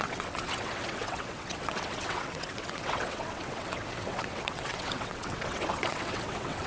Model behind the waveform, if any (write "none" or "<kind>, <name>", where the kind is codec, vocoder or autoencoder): vocoder, WaveNeXt